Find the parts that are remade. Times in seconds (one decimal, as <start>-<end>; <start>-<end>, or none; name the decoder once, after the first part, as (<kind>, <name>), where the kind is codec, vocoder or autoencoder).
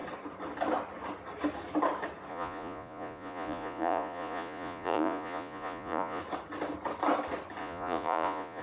2.3-6.2 (vocoder, Vocos); 7.6-8.6